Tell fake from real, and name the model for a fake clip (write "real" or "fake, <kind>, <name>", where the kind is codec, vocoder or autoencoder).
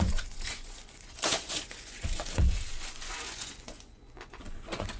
fake, vocoder, Vocos